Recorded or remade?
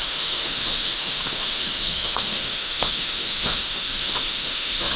remade